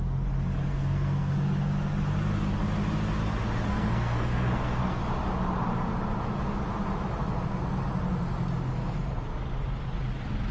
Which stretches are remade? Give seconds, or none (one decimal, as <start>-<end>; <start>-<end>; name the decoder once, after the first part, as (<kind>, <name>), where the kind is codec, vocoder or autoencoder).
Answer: 0.7-1.3 (codec, SNAC); 3.7-5.0